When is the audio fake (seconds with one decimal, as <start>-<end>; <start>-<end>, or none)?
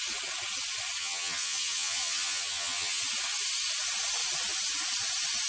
1.0-3.0